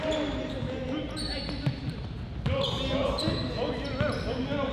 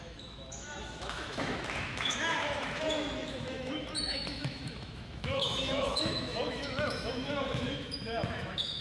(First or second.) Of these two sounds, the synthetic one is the second